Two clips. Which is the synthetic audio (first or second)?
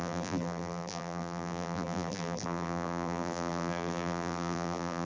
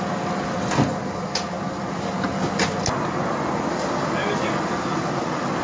first